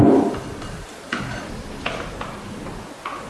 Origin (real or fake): real